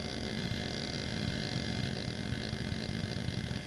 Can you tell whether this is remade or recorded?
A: recorded